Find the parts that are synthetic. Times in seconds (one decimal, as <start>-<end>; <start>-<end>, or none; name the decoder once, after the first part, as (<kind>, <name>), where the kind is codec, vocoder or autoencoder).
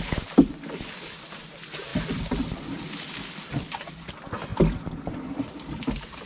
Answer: 1.9-3.1 (vocoder, BigVGAN v2)